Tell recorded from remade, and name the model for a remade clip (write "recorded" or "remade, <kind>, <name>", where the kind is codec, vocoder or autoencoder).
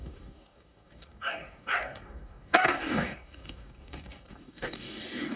remade, codec, DAC